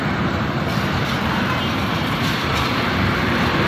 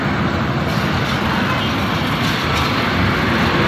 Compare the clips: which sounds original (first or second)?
second